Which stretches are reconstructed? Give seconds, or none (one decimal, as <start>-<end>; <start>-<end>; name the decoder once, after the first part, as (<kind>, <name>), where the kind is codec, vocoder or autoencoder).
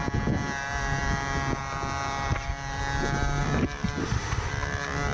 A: 4.0-4.5 (autoencoder, DAC-VAE)